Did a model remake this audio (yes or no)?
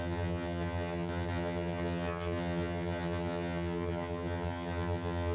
yes